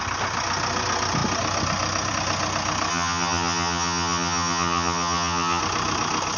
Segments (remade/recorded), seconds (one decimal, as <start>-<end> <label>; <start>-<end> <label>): 0.0-2.9 recorded; 2.9-5.6 remade; 5.6-6.4 recorded